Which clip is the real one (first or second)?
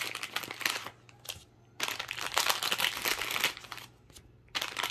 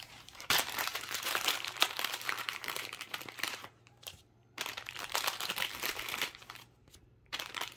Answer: first